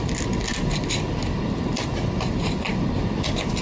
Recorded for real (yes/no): no